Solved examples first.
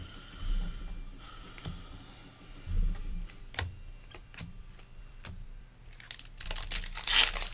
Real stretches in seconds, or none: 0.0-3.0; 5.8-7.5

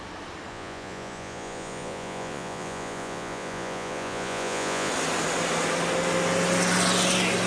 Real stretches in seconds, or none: 0.0-0.5; 4.9-7.5

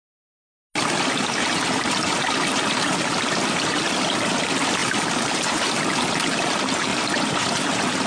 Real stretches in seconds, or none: 0.5-1.1

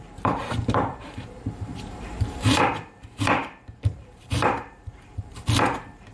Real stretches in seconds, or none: none